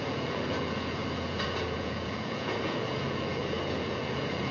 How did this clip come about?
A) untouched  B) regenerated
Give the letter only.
B